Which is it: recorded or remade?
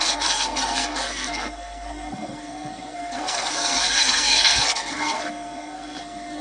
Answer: remade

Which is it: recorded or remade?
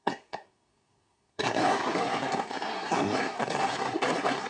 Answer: remade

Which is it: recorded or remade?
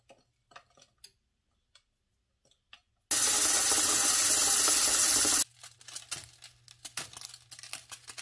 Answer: recorded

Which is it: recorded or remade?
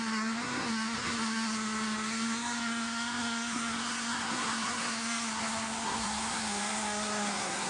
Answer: remade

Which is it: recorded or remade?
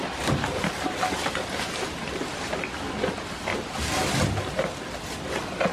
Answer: recorded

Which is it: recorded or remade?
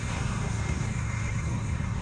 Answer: remade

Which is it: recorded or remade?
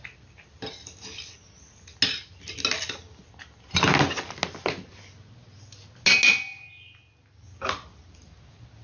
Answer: recorded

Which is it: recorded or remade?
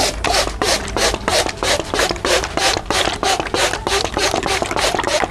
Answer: recorded